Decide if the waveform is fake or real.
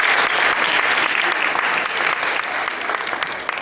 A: real